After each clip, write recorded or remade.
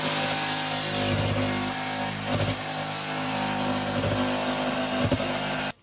recorded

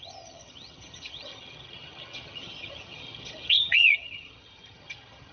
remade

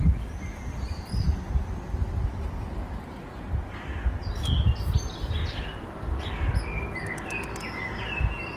recorded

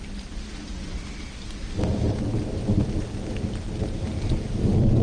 recorded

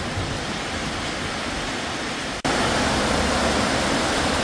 recorded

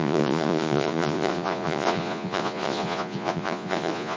remade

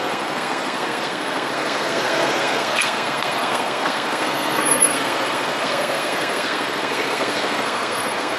remade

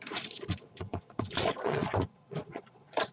remade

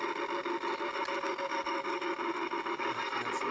recorded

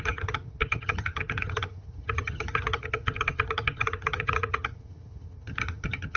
remade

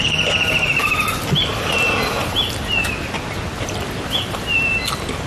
recorded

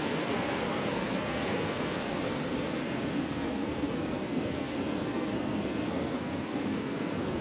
remade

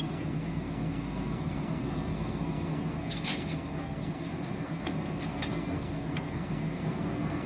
remade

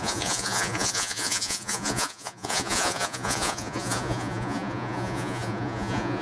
remade